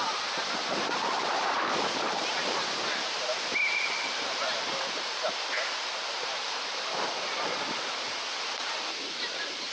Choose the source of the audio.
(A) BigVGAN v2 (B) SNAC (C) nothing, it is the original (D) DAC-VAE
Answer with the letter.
A